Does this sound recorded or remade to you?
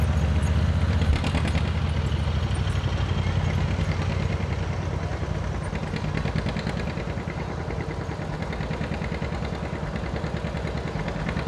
recorded